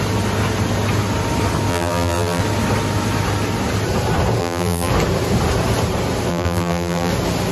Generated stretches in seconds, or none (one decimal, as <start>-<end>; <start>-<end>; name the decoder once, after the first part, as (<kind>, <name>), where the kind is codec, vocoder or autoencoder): 1.7-2.4 (vocoder, BigVGAN v2); 4.4-4.9; 6.3-7.1